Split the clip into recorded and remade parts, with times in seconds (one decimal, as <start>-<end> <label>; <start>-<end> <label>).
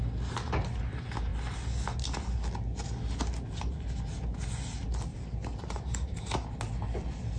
0.0-5.1 recorded; 5.1-6.2 remade; 6.2-7.4 recorded